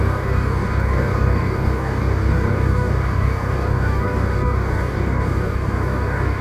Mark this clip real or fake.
fake